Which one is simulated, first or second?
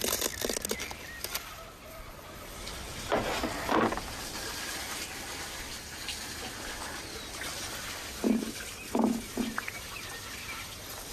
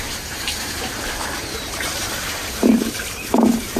second